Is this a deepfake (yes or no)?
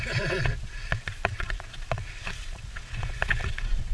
yes